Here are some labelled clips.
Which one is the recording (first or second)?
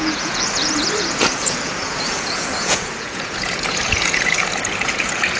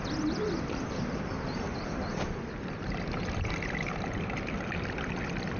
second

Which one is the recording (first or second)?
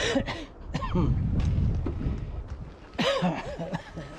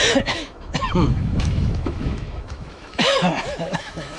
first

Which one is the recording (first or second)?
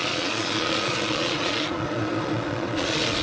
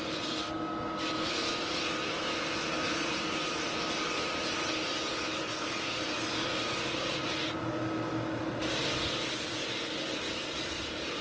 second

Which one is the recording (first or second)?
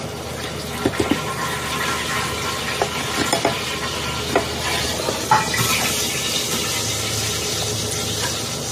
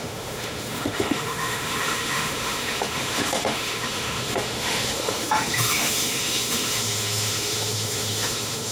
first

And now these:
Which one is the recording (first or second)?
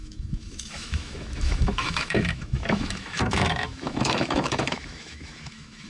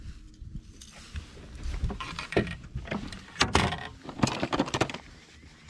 second